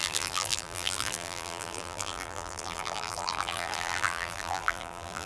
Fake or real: fake